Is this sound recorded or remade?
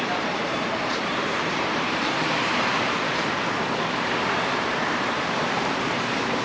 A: remade